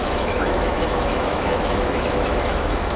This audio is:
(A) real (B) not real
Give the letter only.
B